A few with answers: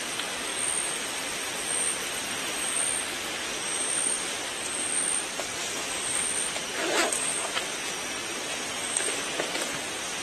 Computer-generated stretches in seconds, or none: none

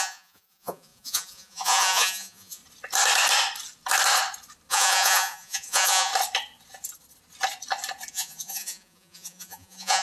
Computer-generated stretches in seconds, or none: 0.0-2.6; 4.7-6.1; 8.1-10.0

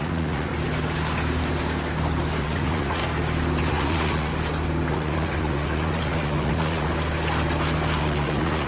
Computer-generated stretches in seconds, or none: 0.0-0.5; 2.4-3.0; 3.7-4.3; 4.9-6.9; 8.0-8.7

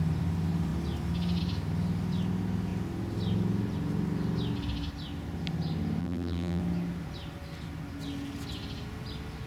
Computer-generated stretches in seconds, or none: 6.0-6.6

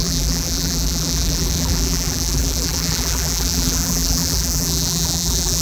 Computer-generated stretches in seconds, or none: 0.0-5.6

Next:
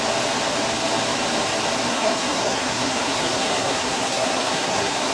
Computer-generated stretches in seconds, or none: 1.9-5.1

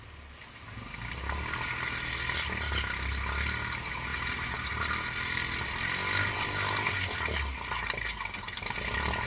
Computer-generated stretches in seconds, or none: 4.1-4.7